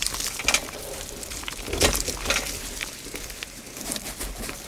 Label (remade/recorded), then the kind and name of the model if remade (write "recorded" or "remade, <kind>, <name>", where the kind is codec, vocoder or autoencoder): recorded